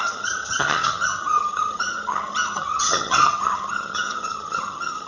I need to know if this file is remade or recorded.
remade